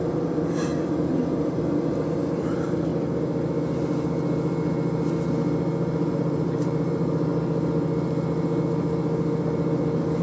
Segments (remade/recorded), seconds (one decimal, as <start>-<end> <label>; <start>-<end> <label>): 0.0-2.9 remade; 2.9-6.1 recorded; 6.1-7.3 remade; 7.3-10.2 recorded